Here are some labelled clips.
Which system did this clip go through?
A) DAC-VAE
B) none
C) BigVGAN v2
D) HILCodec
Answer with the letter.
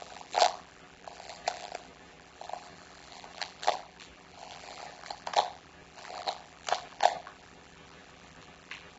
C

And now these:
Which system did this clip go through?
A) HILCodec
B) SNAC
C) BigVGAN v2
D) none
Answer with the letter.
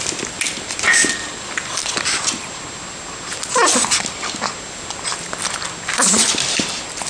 D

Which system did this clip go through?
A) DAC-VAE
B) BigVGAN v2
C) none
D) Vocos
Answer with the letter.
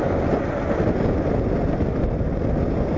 C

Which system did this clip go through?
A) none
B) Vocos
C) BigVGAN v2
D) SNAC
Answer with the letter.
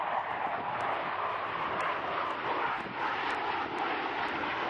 A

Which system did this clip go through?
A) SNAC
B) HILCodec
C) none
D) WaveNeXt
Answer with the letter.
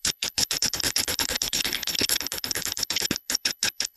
B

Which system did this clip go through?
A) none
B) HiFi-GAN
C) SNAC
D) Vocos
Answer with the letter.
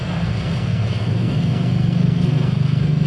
C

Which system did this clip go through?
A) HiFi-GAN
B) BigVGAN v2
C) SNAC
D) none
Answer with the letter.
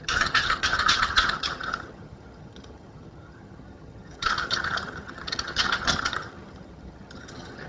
A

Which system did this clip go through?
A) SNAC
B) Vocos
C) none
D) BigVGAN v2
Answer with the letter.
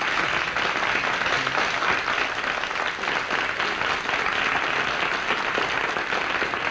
C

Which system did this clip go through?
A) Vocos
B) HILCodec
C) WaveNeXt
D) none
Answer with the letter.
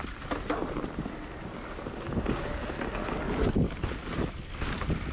D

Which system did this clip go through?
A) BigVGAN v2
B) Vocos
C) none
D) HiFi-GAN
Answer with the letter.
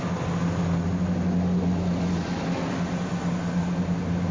C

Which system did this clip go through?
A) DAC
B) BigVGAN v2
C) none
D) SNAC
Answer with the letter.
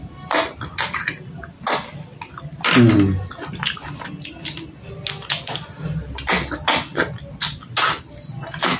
C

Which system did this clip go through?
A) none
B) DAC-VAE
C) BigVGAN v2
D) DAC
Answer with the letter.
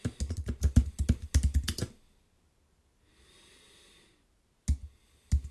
A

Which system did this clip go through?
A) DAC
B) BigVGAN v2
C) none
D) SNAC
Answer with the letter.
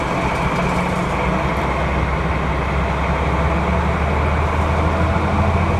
C